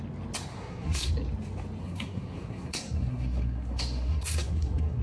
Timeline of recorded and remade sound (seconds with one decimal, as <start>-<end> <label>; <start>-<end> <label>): 0.0-0.5 recorded; 0.5-1.1 remade; 1.1-1.8 recorded; 1.8-5.0 remade

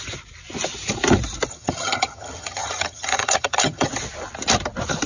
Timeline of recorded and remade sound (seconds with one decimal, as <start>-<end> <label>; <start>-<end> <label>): 0.0-1.5 recorded; 1.5-3.9 remade; 3.9-5.1 recorded